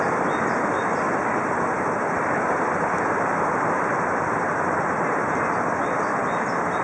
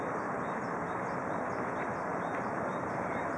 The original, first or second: first